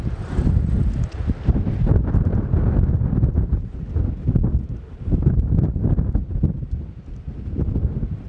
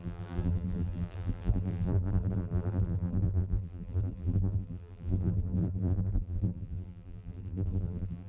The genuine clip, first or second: first